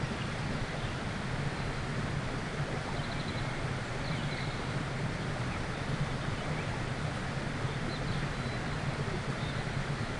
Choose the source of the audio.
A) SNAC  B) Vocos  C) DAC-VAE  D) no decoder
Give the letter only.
D